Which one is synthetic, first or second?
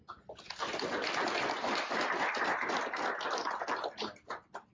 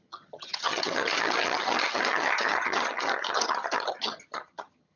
second